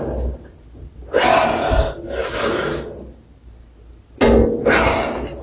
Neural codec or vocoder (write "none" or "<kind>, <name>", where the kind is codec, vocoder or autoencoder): none